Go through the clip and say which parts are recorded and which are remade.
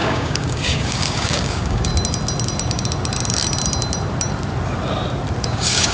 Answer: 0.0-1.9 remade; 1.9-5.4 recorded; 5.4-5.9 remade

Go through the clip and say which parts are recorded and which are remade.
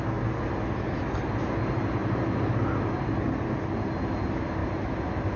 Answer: 0.0-5.4 recorded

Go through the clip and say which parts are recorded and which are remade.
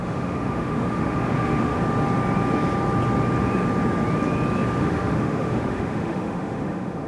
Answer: 0.0-1.8 remade; 1.8-4.8 recorded; 4.8-7.1 remade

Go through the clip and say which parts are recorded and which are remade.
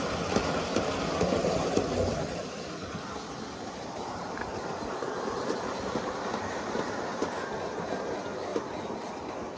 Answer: 0.0-8.5 recorded; 8.5-9.1 remade; 9.1-9.6 recorded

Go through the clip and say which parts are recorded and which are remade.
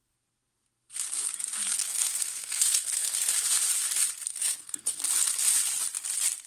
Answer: 0.0-1.6 recorded; 1.6-3.3 remade; 3.3-4.3 recorded; 4.3-5.0 remade; 5.0-6.5 recorded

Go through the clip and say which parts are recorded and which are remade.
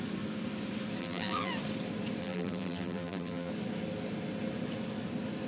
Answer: 0.0-1.0 recorded; 1.0-1.5 remade; 1.5-2.2 recorded; 2.2-3.5 remade; 3.5-5.5 recorded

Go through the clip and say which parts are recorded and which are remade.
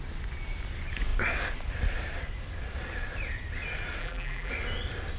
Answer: 0.0-4.0 recorded; 4.0-4.5 remade; 4.5-5.2 recorded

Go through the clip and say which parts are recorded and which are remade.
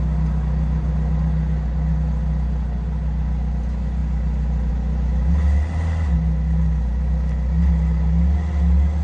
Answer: 0.0-9.0 recorded